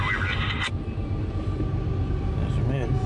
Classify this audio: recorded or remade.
recorded